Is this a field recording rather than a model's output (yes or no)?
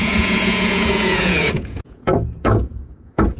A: no